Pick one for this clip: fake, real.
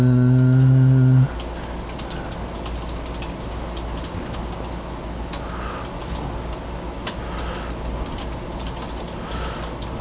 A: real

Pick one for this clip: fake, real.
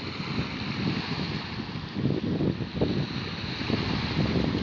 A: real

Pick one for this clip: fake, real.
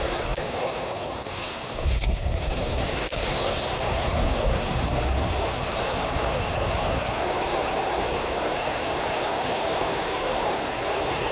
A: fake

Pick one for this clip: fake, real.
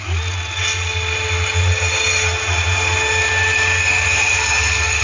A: real